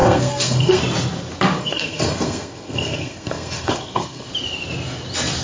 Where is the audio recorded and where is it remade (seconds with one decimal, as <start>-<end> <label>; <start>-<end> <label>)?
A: 0.0-0.8 remade; 0.8-1.6 recorded; 1.6-4.3 remade; 4.3-5.4 recorded